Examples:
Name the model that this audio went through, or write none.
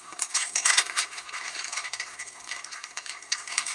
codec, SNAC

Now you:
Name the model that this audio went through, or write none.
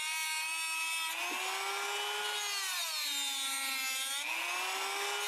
none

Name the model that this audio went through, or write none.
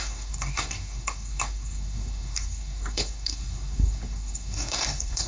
codec, SNAC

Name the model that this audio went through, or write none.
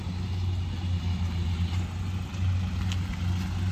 none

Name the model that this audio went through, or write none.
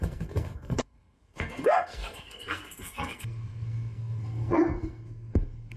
codec, SNAC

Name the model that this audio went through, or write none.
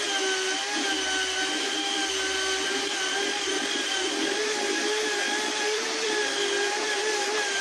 none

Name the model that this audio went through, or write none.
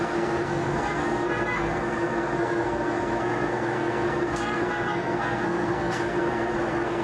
codec, SNAC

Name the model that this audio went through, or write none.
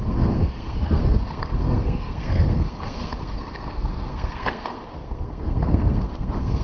codec, SNAC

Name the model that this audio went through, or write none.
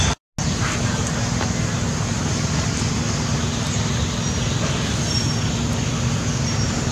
none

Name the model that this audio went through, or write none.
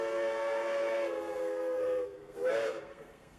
codec, SNAC